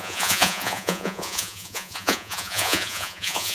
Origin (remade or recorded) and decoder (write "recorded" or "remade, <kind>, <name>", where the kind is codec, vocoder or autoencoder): remade, vocoder, Vocos